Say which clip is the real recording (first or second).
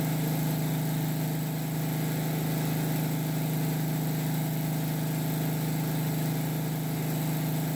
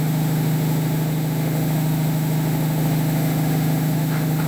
first